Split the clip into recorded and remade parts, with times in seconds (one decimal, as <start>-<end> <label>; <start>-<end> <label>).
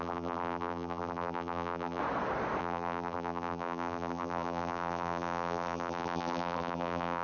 0.0-2.0 remade; 2.0-2.6 recorded; 2.6-7.2 remade